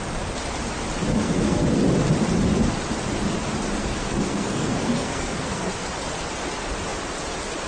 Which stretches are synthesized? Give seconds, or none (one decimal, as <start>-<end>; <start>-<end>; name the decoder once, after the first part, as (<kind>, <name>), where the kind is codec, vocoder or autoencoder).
1.1-1.8 (codec, SNAC); 3.8-5.9